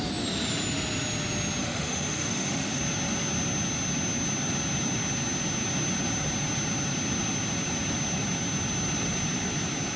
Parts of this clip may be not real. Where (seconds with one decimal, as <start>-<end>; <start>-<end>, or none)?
1.6-2.8